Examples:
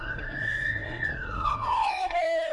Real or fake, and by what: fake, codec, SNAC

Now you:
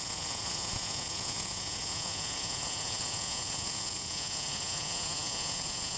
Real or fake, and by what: fake, vocoder, Vocos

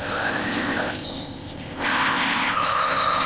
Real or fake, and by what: fake, codec, ZipCodec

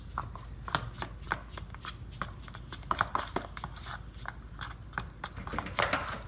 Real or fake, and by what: real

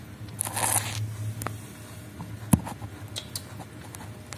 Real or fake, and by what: real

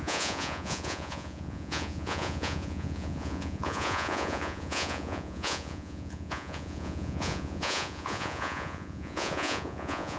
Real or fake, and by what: fake, vocoder, Vocos